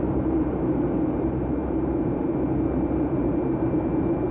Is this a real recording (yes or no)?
no